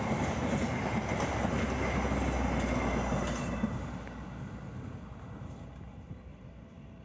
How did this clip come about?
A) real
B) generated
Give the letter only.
A